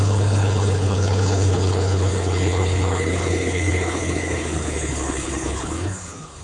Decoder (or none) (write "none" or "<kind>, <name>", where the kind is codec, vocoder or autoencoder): codec, HILCodec